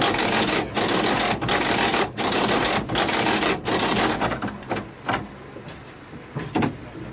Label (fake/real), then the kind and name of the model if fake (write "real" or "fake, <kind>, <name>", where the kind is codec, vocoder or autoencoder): real